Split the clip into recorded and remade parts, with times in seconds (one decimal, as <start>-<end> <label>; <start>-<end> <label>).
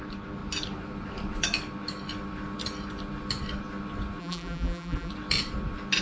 0.0-4.2 recorded; 4.2-5.1 remade; 5.1-6.0 recorded